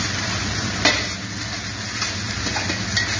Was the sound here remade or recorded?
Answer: recorded